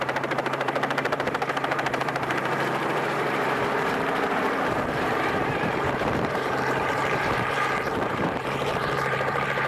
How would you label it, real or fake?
fake